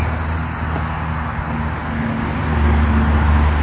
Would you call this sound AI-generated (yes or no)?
no